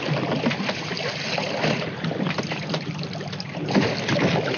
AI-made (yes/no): no